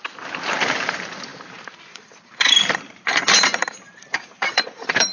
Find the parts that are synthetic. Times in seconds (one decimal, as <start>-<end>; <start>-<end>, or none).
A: 0.0-5.1